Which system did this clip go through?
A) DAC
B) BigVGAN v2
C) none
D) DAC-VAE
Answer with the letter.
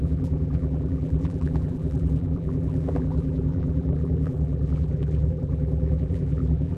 B